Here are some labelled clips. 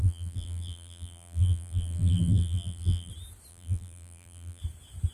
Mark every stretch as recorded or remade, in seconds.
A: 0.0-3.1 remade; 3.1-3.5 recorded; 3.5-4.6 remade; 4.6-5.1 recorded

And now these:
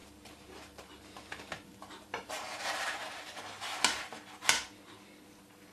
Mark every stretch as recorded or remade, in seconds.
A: 0.0-3.4 remade; 3.4-5.7 recorded